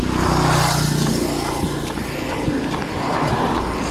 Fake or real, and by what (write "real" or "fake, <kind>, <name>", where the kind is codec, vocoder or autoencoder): real